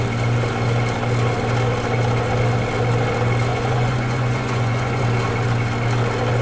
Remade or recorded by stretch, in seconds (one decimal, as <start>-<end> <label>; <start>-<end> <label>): 0.0-3.5 recorded; 3.5-5.0 remade; 5.0-6.4 recorded